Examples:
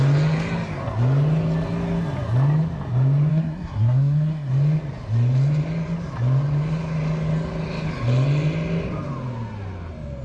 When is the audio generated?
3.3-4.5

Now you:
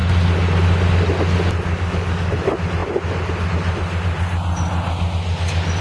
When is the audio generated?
1.7-2.3

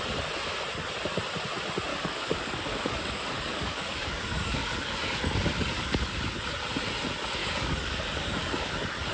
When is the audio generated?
1.9-6.4; 7.4-8.7